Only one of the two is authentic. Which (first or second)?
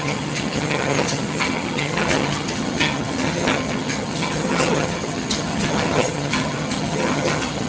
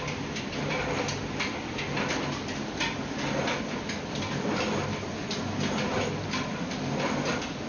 second